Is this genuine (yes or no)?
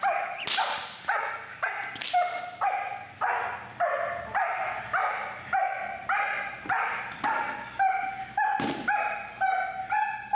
yes